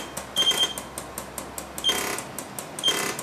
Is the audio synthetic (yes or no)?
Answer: no